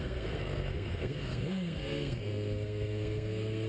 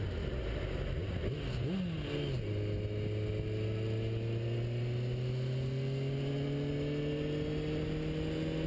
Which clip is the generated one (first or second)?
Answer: first